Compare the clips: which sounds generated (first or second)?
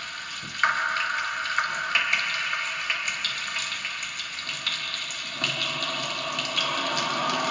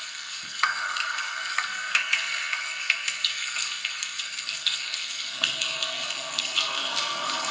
second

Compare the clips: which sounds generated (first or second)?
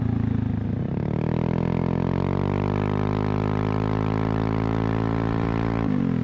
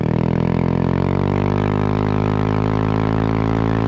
second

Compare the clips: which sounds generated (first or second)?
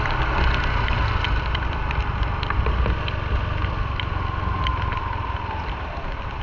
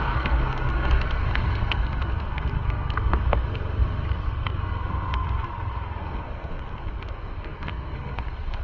second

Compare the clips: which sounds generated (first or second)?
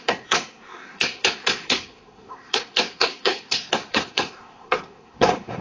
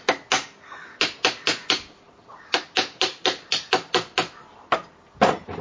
first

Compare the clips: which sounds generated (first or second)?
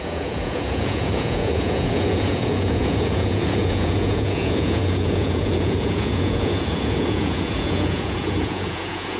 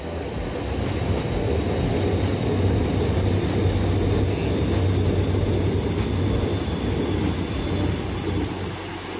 first